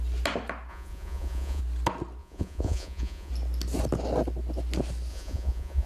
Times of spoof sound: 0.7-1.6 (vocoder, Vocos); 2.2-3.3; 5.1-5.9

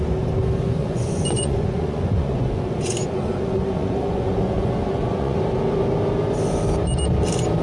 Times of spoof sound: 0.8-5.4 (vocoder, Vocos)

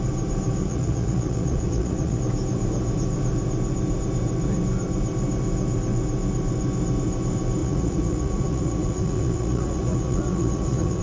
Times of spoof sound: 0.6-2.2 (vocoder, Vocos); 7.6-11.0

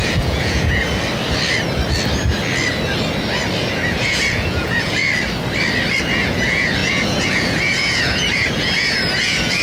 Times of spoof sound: 0.0-0.8 (vocoder, Vocos); 3.6-5.0; 6.0-9.6

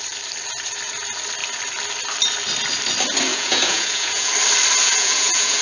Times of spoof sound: 3.3-4.3 (vocoder, Vocos); 4.8-5.6

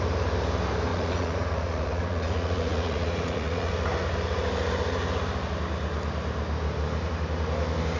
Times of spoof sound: 0.9-3.7 (vocoder, Vocos)

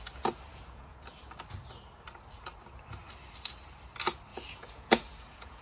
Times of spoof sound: 0.5-1.3 (vocoder, Vocos); 4.3-5.6

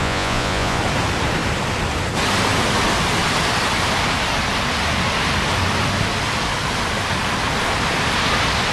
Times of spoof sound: 0.0-0.8 (vocoder, Vocos)